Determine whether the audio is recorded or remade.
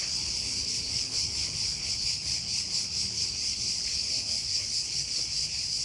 remade